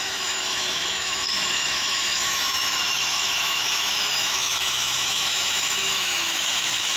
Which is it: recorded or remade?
remade